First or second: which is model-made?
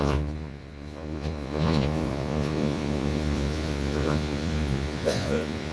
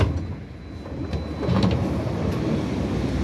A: first